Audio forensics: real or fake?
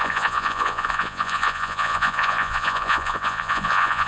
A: fake